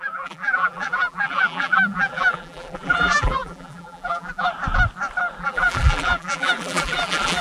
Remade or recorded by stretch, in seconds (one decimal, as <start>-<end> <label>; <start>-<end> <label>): 0.0-4.5 remade; 4.5-5.4 recorded; 5.4-7.4 remade